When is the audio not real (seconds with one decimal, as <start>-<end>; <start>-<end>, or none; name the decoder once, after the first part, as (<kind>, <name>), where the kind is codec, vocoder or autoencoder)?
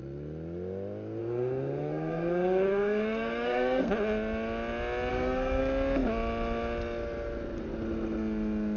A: 1.2-3.9 (codec, SNAC); 5.1-5.6